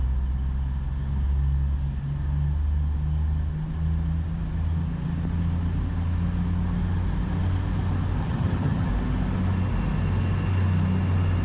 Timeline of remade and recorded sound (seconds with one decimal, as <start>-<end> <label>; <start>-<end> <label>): 0.0-8.2 recorded; 8.2-8.9 remade; 8.9-11.4 recorded